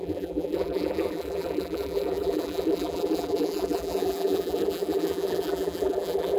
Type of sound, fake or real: fake